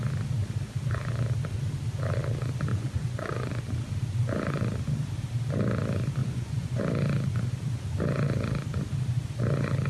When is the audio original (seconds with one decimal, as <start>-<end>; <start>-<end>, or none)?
0.0-2.7; 3.5-6.2; 6.8-9.9